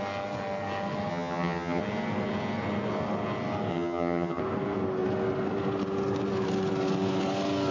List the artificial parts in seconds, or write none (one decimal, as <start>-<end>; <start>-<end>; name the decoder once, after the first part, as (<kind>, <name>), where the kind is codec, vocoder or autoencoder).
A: 1.1-1.8 (vocoder, HiFi-GAN); 3.7-4.4